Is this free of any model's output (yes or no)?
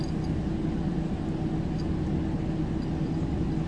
yes